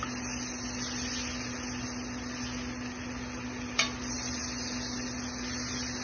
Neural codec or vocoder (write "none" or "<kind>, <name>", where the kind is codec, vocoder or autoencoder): none